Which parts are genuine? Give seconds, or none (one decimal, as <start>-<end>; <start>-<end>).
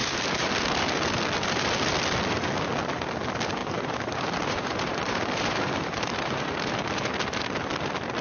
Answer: 0.5-3.6; 6.7-8.2